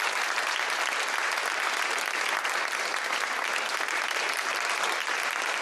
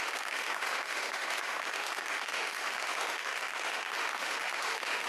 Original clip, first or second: first